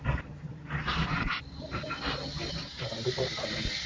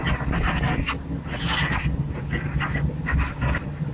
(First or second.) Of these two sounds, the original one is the second